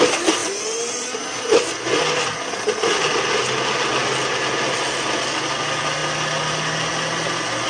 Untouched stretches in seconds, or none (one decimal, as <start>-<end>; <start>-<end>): 0.0-7.7